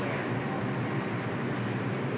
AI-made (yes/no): no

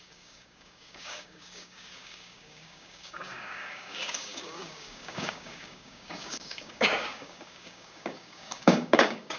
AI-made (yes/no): yes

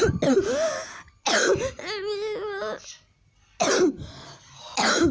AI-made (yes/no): no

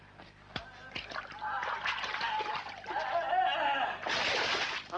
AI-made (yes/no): no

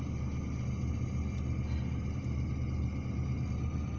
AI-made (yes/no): no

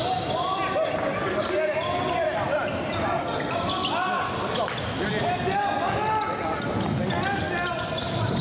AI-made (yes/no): no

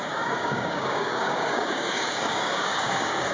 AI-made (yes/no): yes